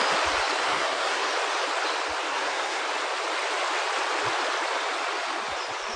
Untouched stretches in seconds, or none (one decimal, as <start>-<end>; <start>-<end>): 0.0-0.6; 1.3-2.3; 2.8-6.0